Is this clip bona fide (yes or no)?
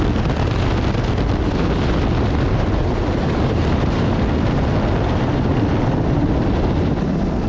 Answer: yes